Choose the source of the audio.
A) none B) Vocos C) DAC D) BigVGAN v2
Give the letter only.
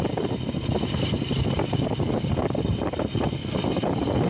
A